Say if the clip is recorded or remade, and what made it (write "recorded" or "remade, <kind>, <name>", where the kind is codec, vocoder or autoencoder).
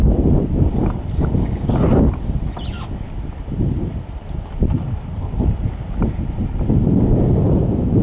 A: recorded